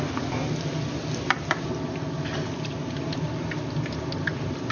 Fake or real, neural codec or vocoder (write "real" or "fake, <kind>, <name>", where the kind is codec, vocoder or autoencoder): real